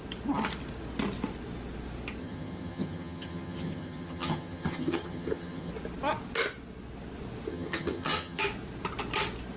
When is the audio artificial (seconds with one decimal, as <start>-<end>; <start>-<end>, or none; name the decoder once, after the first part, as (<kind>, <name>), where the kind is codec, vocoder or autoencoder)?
2.2-5.7 (vocoder, HiFi-GAN); 7.5-8.4